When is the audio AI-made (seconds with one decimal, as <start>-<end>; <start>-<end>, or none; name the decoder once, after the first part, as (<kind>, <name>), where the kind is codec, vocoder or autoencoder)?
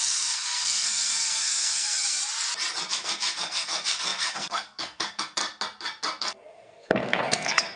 0.0-2.2 (codec, SNAC); 2.9-5.4; 6.2-7.8